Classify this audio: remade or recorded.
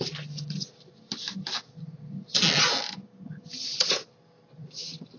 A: recorded